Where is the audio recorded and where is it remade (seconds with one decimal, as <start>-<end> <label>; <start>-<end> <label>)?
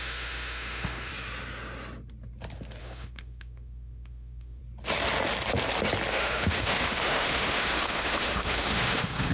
0.0-1.1 remade; 1.1-2.8 recorded; 2.8-4.6 remade; 4.6-6.1 recorded; 6.1-9.3 remade